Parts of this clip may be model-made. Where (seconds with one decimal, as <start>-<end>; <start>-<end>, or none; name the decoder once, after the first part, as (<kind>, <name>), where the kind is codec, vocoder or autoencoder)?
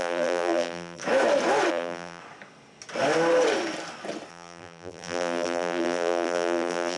0.0-1.0 (vocoder, BigVGAN v2); 1.7-2.2; 4.3-7.0